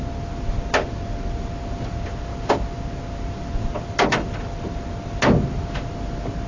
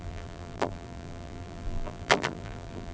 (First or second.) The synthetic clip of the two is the second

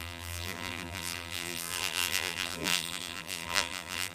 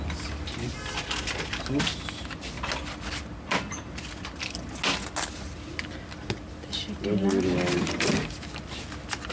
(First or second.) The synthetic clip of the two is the first